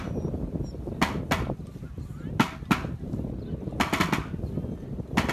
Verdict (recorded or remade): recorded